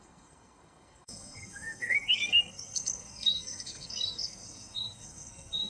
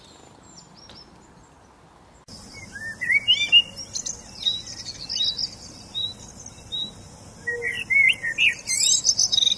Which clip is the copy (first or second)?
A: first